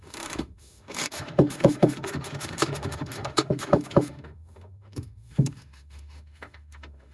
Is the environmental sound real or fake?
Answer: fake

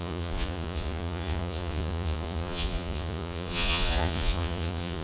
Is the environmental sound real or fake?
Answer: fake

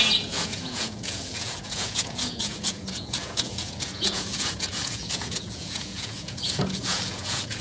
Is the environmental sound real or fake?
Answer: fake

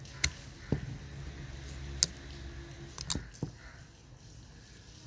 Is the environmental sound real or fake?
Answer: real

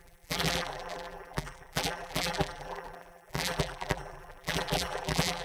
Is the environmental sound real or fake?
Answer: fake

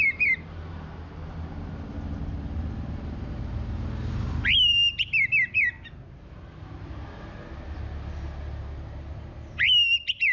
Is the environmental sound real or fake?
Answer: real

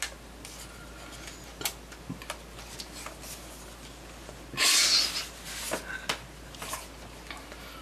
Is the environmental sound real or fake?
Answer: real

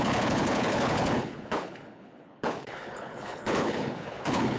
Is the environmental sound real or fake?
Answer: fake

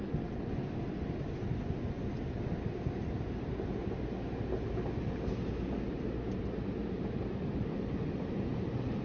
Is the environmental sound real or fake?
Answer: real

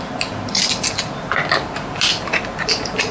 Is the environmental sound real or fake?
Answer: real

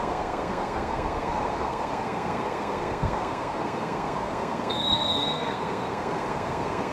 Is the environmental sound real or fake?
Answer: fake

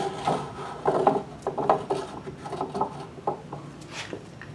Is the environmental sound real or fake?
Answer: real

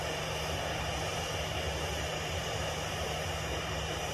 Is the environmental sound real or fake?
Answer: real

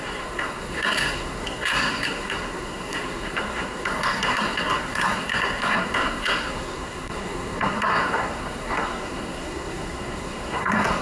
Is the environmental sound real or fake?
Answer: fake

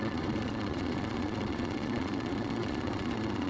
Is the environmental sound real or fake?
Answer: fake